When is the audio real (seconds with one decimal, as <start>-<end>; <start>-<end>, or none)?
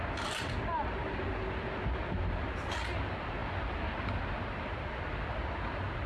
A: 0.0-6.1